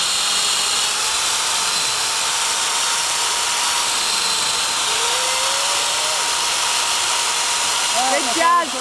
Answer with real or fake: real